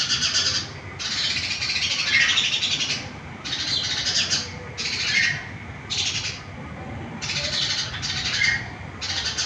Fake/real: real